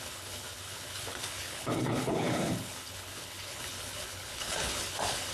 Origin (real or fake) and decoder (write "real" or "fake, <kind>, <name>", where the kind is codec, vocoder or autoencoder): fake, codec, HILCodec